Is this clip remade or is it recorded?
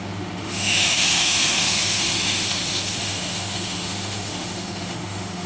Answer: remade